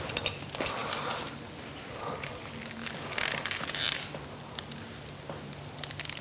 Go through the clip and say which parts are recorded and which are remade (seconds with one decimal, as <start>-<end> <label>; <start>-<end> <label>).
0.0-6.2 recorded